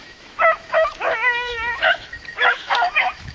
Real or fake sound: fake